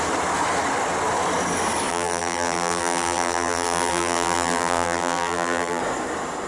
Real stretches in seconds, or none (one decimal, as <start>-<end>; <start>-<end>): 0.0-1.9; 5.8-6.5